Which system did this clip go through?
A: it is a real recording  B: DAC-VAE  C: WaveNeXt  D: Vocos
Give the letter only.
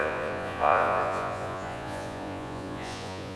D